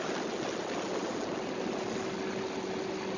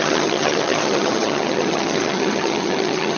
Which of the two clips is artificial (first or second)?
second